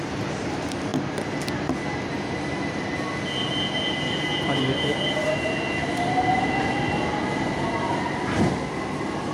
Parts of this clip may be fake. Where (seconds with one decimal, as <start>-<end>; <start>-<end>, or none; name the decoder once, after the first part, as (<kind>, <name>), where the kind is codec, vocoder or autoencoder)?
none